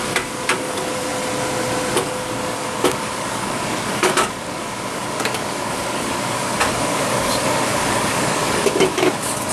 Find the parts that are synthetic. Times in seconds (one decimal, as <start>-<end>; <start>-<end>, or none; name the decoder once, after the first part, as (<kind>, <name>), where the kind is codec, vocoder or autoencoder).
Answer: 0.0-1.1 (codec, DAC); 1.9-9.5